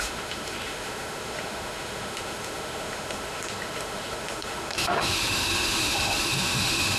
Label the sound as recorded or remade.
remade